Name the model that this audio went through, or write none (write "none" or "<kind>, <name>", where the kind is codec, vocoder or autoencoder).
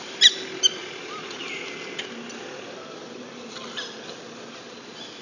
none